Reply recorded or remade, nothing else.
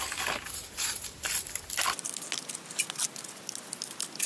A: recorded